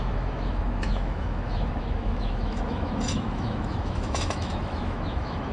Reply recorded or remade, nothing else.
remade